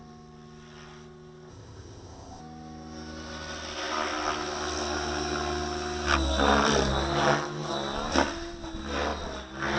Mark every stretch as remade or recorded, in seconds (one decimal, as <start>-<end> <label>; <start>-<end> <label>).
0.0-1.5 recorded; 1.5-2.4 remade; 2.4-9.8 recorded